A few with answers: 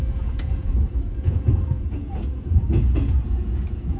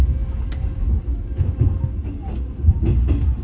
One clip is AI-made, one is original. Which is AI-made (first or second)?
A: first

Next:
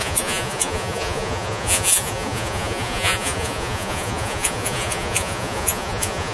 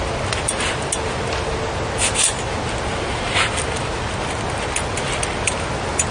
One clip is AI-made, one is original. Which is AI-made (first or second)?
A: first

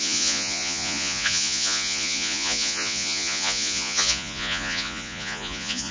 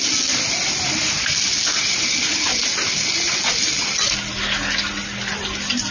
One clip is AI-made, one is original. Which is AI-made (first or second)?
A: first